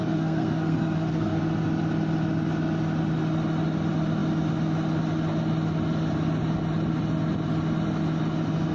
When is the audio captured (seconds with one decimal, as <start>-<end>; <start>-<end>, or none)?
1.4-8.7

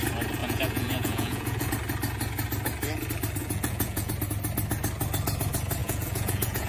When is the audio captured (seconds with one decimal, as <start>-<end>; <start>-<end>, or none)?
0.0-0.4; 1.7-3.4; 4.1-5.8

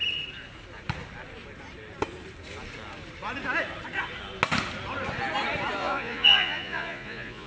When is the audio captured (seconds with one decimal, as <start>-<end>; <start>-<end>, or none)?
0.0-5.8

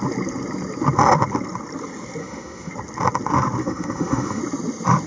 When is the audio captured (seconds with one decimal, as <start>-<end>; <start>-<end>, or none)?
0.0-2.2; 2.7-3.6; 4.4-5.1

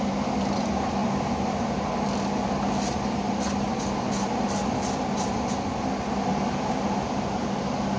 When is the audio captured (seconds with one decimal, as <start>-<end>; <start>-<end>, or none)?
0.0-8.0

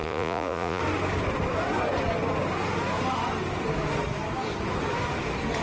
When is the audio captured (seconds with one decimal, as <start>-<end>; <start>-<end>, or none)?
0.8-5.6